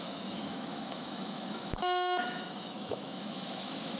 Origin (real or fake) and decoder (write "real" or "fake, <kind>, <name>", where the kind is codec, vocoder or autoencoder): fake, autoencoder, DAC-VAE